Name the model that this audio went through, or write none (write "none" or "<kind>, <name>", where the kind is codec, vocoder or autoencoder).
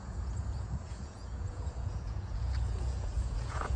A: vocoder, Vocos